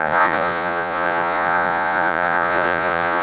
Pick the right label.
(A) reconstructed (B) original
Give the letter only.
A